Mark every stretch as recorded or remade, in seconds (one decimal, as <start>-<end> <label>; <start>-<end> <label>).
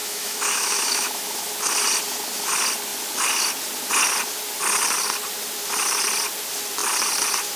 0.0-1.5 remade; 1.5-7.6 recorded